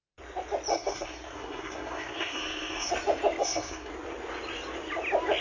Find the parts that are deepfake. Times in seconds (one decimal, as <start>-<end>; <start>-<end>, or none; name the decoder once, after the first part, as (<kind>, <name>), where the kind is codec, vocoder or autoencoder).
0.7-2.9 (codec, SNAC); 3.4-3.9